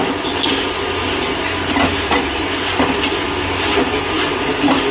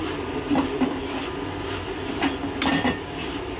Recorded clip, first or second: first